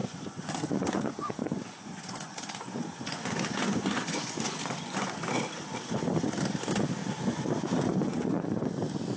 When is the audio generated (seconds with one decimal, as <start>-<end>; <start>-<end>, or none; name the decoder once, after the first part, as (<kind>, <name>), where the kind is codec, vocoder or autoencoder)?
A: 0.0-5.2 (vocoder, Vocos); 7.0-8.7